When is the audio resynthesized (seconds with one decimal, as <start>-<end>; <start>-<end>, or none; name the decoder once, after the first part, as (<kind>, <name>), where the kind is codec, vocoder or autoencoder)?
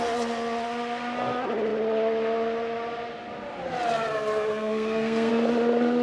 4.5-5.3 (codec, SNAC)